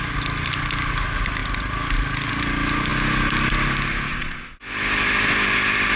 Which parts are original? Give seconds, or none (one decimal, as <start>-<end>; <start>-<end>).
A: 0.0-4.1; 4.6-6.0